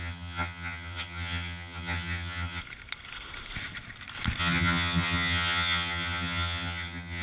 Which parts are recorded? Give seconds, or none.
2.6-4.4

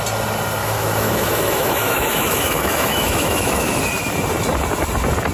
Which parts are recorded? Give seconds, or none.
0.0-0.6; 3.8-5.3

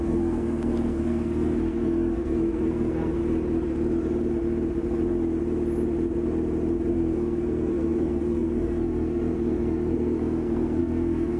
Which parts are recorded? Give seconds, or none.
3.2-6.9

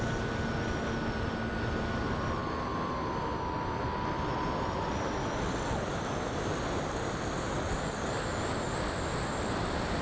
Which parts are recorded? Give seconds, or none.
0.0-10.0

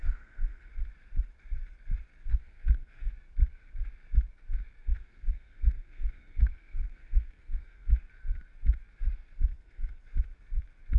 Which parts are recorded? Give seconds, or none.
0.7-2.3; 3.1-4.8; 7.9-9.5; 10.0-11.0

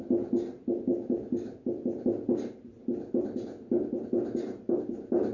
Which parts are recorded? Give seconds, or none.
0.0-5.3